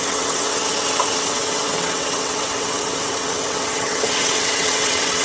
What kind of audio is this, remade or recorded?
remade